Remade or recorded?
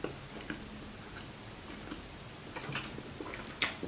recorded